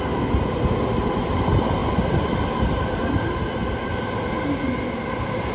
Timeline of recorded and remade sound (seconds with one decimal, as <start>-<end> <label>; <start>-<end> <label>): 0.0-1.8 recorded; 1.8-2.8 remade; 2.8-5.5 recorded

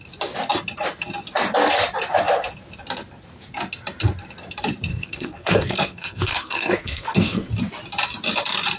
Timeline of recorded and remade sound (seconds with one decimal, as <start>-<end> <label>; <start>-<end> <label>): 0.0-4.9 recorded; 4.9-7.5 remade; 7.5-8.8 recorded